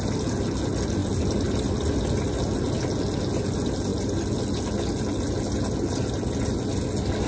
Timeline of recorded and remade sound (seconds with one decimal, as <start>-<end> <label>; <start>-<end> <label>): 0.0-7.3 recorded